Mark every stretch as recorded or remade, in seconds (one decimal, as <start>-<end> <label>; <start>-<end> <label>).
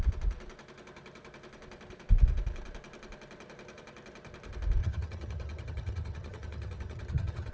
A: 0.0-4.8 recorded; 4.8-7.5 remade